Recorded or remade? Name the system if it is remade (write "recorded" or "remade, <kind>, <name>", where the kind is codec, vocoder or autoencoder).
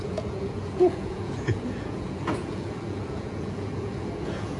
remade, vocoder, Vocos